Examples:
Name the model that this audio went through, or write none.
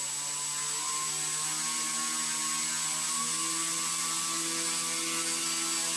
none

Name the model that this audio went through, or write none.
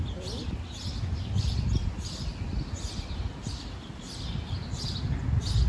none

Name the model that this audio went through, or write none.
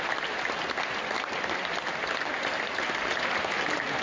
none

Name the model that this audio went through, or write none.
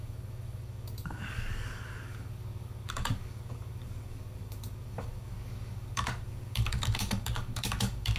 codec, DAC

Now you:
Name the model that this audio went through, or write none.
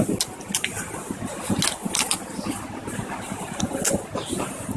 none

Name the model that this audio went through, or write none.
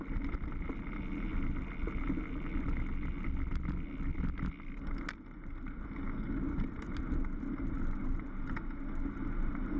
none